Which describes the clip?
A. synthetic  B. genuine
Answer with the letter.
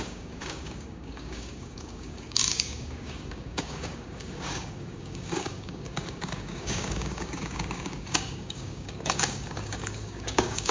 A